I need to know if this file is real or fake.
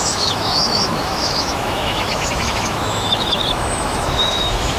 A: fake